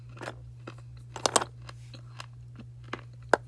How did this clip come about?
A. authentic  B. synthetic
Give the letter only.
A